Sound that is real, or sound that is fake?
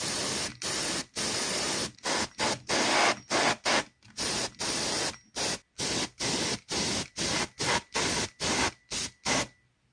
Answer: real